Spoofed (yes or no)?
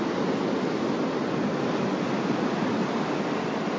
no